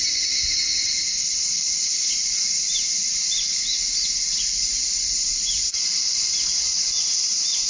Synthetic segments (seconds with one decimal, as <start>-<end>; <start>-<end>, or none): 4.3-6.4